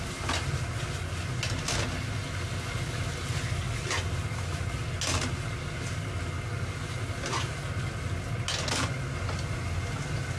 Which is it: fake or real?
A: real